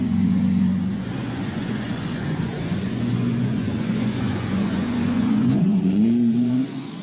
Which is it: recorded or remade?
remade